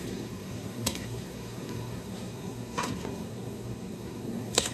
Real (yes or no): no